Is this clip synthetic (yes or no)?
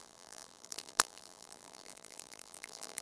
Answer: yes